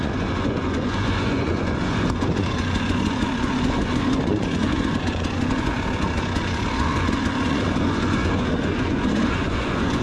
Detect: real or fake fake